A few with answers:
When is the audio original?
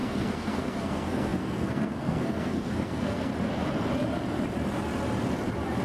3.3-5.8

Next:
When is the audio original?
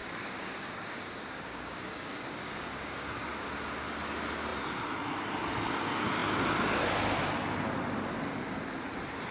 3.5-9.3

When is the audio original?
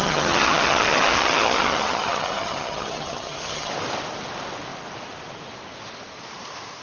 3.7-6.8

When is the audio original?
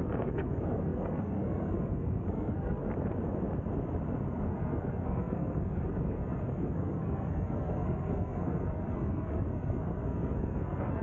2.8-4.5